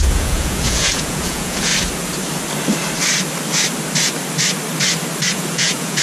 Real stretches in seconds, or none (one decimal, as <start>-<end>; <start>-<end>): 1.7-5.3